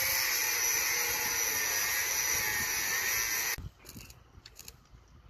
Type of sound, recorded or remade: recorded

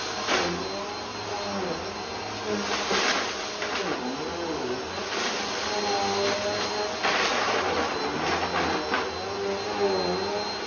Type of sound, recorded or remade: recorded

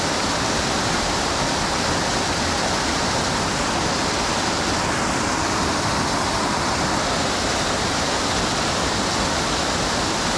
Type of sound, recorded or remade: recorded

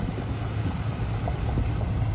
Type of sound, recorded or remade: recorded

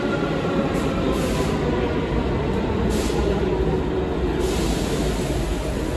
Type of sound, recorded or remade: recorded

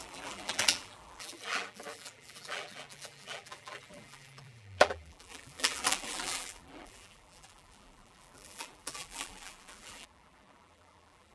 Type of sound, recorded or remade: remade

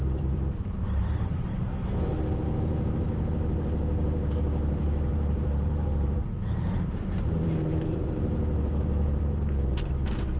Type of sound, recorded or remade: remade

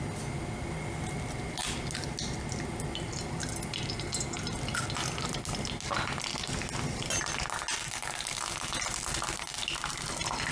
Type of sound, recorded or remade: recorded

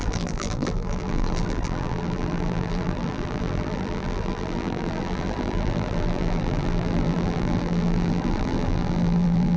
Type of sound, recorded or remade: remade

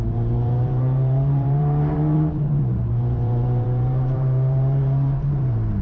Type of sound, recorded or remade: remade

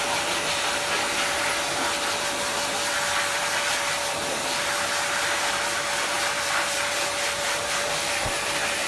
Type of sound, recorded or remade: remade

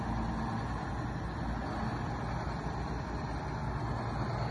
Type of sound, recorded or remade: recorded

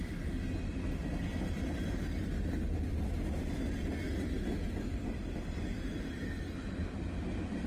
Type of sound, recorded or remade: recorded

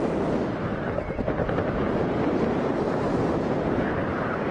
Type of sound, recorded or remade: recorded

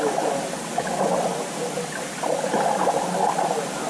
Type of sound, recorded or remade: recorded